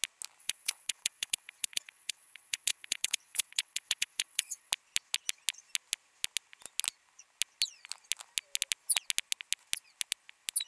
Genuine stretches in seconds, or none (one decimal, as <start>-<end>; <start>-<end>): 0.0-0.4; 4.7-10.7